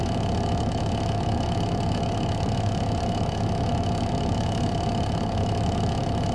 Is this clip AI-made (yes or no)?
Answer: yes